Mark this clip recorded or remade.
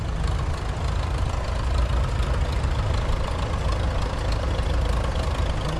recorded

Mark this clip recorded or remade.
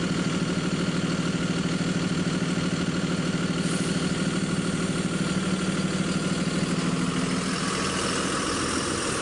recorded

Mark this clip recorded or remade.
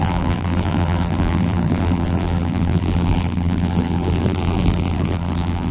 remade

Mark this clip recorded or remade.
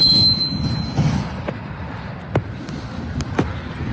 recorded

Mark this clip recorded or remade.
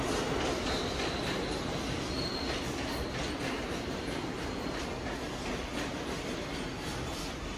recorded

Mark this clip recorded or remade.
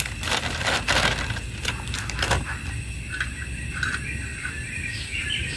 recorded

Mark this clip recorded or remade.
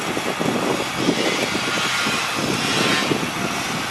recorded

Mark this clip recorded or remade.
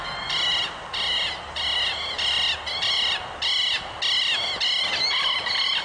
recorded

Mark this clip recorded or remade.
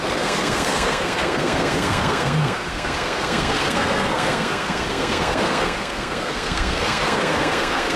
remade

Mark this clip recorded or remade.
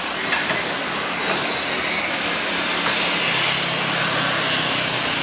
recorded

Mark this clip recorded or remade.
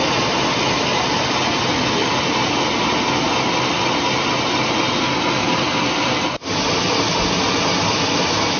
recorded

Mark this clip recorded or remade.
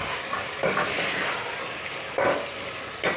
recorded